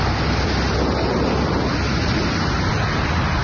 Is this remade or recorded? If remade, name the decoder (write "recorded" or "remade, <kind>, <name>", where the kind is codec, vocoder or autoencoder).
recorded